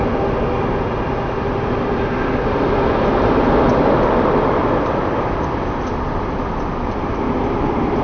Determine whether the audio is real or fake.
real